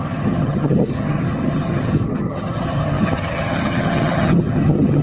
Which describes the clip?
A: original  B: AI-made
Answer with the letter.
B